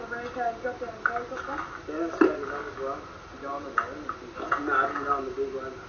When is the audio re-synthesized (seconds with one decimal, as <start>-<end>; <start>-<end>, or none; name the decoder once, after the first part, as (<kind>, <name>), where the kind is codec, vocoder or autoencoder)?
none